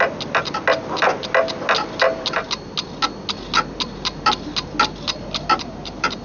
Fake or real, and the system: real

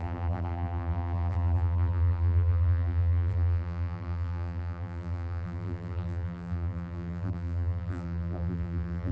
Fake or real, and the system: fake, vocoder, BigVGAN v2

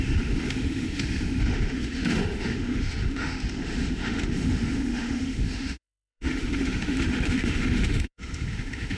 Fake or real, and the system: fake, autoencoder, DAC-VAE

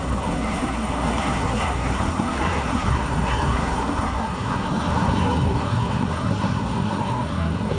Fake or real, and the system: fake, codec, SNAC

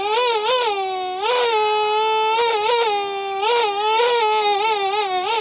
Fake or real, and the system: real